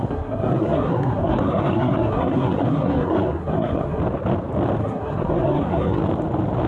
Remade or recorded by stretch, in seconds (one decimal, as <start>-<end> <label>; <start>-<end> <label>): 0.0-4.0 remade; 4.0-4.8 recorded; 4.8-6.0 remade; 6.0-6.7 recorded